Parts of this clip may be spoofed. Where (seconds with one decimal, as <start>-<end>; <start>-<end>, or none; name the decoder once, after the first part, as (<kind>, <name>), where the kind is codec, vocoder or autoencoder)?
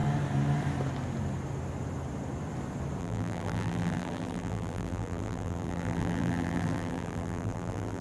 3.0-8.0 (vocoder, BigVGAN v2)